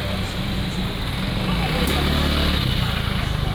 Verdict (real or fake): real